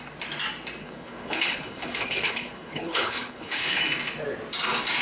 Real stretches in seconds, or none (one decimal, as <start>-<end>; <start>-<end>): 0.0-0.8; 3.8-5.0